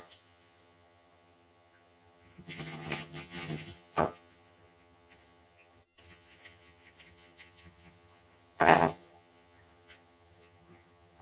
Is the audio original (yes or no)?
no